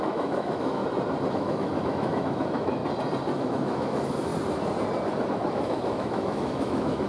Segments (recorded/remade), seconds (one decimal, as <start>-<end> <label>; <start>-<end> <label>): 0.0-0.8 remade; 0.8-1.3 recorded; 1.3-2.8 remade; 2.8-3.4 recorded; 3.4-4.3 remade; 4.3-5.3 recorded; 5.3-7.1 remade